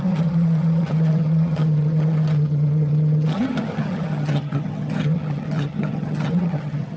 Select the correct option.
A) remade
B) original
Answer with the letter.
A